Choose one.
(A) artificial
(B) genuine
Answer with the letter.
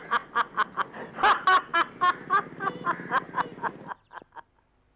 B